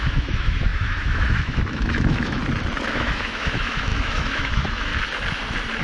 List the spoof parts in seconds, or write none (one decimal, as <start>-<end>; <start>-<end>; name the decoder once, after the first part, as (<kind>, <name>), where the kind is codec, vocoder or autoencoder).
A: 0.0-2.4 (autoencoder, DAC-VAE); 2.9-4.9